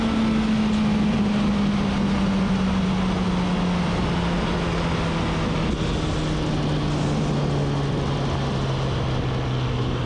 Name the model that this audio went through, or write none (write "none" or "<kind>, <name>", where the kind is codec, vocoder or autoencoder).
none